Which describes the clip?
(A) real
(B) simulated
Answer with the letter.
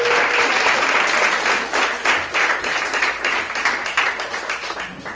A